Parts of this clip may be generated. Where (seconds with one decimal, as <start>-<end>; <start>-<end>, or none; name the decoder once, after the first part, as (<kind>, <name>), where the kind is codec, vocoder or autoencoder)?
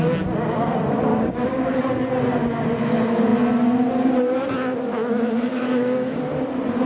1.1-1.9 (codec, DAC); 5.5-6.2